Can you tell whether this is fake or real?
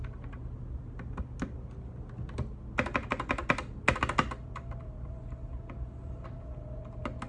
real